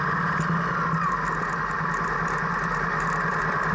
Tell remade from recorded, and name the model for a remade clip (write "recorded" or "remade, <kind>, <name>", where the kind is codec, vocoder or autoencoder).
recorded